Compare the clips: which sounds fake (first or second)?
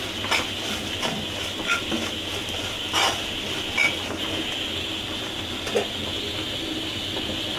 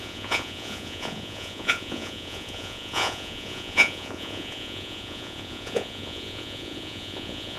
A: second